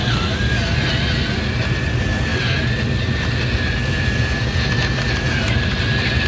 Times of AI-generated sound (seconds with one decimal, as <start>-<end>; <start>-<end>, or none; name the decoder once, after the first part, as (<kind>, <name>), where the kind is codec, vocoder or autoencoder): none